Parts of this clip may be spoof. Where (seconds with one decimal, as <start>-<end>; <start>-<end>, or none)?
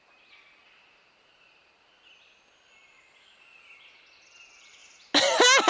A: none